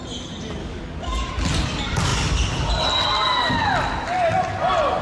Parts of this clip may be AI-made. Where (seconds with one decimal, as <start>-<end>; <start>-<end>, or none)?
0.6-1.3